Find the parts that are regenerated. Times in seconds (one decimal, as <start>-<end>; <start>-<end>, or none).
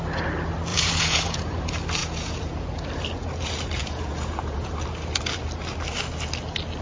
0.7-1.5; 2.0-2.9; 3.8-4.7